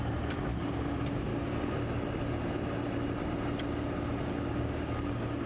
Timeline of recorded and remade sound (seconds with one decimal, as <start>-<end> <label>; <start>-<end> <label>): 0.0-0.6 recorded; 0.6-1.3 remade; 1.3-4.6 recorded; 4.6-5.5 remade